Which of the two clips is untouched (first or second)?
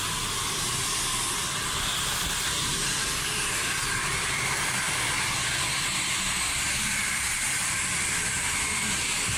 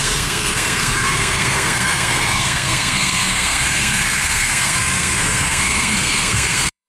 first